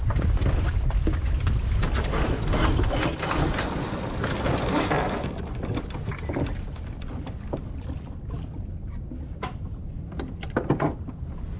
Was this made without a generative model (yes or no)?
yes